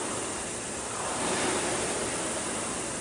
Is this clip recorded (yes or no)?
yes